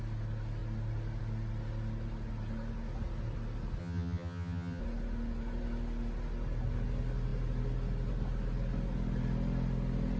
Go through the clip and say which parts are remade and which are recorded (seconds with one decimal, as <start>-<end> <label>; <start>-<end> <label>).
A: 0.0-3.8 recorded; 3.8-4.8 remade; 4.8-10.2 recorded